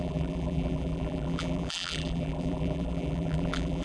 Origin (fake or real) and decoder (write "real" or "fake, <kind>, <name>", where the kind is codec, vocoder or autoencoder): fake, vocoder, BigVGAN v2